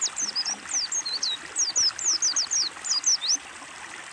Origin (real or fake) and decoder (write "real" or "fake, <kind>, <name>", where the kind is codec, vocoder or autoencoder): real